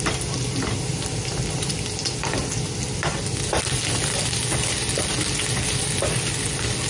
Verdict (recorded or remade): recorded